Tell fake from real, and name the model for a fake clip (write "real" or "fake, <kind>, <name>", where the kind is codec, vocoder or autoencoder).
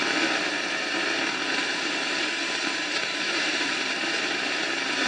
fake, vocoder, BigVGAN v2